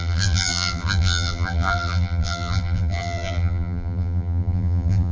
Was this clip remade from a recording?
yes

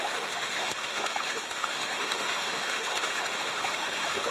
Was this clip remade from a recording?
yes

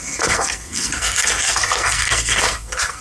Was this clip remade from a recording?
yes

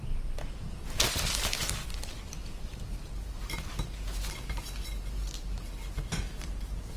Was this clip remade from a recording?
no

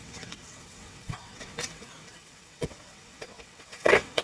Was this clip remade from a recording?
yes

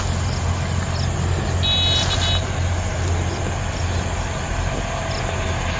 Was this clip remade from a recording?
no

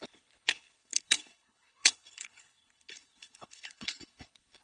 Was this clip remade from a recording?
yes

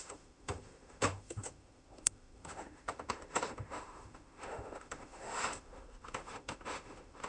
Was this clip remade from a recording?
yes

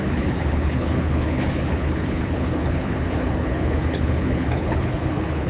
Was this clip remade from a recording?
yes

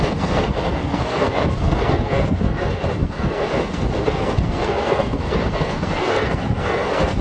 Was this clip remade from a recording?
yes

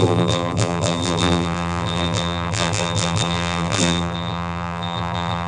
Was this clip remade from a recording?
yes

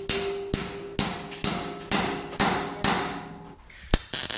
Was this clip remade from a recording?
no